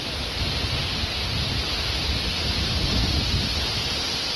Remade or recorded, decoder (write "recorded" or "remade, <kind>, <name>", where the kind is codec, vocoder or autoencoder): recorded